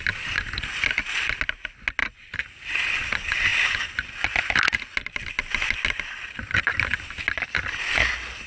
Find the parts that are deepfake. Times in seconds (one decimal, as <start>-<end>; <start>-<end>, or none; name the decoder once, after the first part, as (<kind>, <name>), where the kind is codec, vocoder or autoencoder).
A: 2.0-2.7 (vocoder, BigVGAN v2)